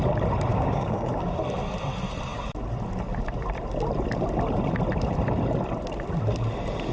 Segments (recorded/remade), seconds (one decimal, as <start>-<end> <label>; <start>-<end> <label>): 0.0-0.5 recorded; 0.5-1.1 remade; 1.1-6.9 recorded